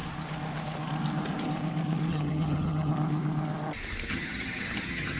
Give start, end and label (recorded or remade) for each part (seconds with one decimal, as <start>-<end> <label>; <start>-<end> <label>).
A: 0.0-2.1 recorded; 2.1-2.9 remade; 2.9-4.1 recorded; 4.1-5.2 remade